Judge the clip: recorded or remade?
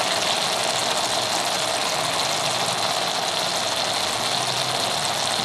recorded